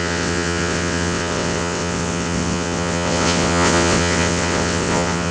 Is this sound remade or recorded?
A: remade